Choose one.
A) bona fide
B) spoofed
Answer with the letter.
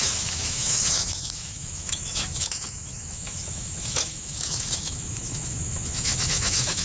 B